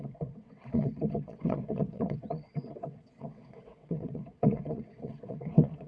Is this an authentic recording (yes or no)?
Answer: no